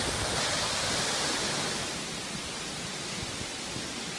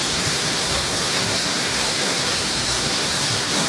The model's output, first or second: second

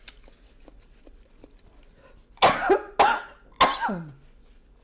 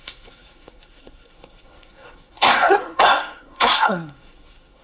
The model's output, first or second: second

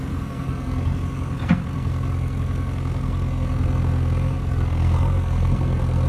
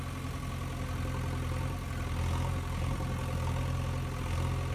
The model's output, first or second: first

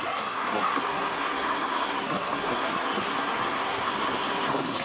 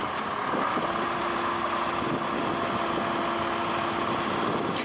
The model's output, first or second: first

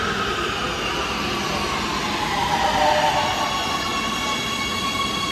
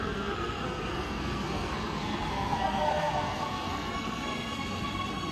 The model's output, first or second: second